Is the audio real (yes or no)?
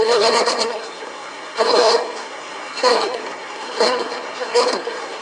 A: no